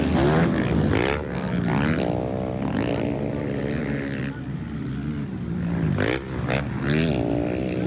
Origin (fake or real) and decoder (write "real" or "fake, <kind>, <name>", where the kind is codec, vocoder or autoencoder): real